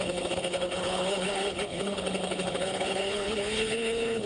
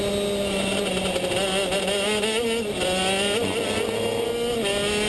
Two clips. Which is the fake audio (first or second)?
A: first